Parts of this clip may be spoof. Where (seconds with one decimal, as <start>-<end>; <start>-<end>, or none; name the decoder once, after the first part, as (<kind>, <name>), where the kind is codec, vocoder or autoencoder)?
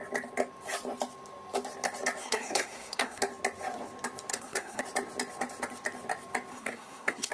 2.2-3.2 (codec, SNAC); 4.3-4.8; 6.5-7.3